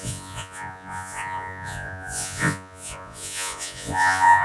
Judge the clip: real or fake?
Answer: fake